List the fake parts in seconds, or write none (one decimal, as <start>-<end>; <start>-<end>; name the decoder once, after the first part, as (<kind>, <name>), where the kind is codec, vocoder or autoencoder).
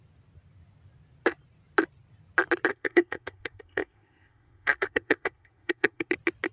2.7-6.1 (codec, SNAC)